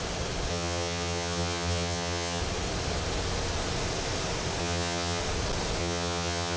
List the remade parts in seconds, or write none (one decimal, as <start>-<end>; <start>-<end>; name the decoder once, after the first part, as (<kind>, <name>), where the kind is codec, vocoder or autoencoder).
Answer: 0.5-2.4 (vocoder, HiFi-GAN); 4.6-5.2; 5.8-6.6